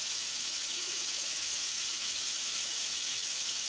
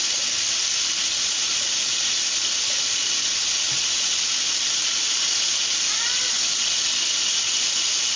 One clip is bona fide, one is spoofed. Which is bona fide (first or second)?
second